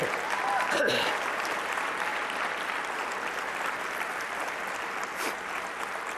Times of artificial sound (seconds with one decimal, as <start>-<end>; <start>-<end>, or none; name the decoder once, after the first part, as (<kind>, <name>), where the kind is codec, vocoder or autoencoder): none